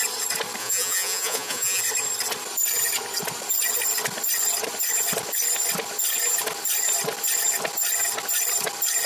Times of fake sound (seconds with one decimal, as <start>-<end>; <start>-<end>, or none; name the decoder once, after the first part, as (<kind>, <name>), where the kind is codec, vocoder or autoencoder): 0.6-1.8 (vocoder, Vocos)